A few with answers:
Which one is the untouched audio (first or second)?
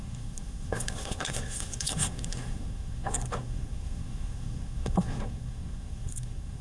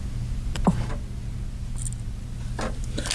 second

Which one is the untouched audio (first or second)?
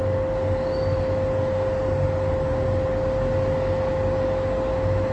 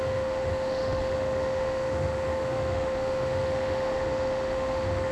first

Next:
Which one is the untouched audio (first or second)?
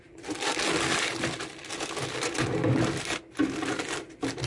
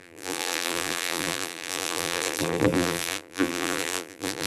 first